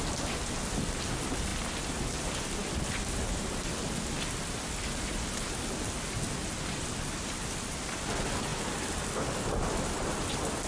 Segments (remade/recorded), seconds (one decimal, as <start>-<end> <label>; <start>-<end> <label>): 0.0-10.7 recorded